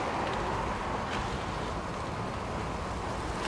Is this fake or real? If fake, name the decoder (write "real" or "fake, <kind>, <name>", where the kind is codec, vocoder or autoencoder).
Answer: real